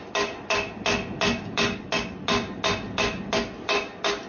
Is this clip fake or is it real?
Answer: real